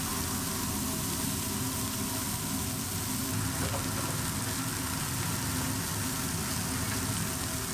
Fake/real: real